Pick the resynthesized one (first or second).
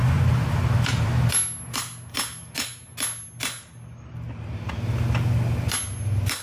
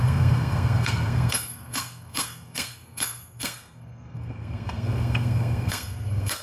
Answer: second